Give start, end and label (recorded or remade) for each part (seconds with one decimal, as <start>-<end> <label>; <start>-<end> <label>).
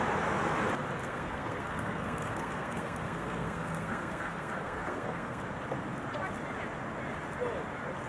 0.0-1.0 recorded; 1.0-5.4 remade; 5.4-8.1 recorded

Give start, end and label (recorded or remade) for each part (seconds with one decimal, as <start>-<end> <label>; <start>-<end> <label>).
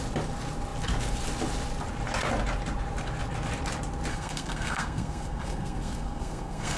0.0-4.1 recorded; 4.1-6.8 remade